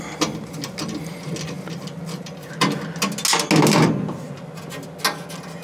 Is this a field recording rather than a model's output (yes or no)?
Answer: yes